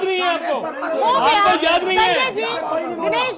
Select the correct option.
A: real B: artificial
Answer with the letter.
A